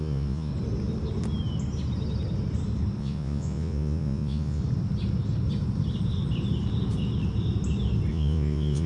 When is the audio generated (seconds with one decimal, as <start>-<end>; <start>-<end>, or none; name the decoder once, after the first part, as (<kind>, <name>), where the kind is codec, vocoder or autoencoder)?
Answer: 0.0-0.5 (vocoder, Vocos); 3.0-4.6; 8.1-8.9